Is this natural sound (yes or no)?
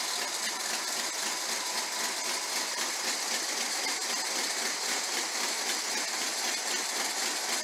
yes